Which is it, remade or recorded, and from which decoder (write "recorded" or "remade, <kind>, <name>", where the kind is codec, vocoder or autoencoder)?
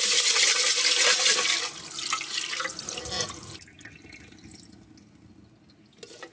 recorded